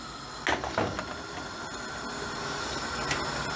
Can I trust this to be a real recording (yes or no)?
yes